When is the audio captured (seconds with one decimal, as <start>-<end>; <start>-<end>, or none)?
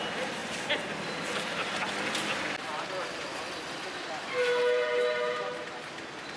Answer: 0.0-6.4